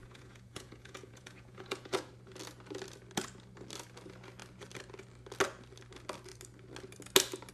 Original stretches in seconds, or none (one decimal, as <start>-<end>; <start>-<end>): 2.1-7.5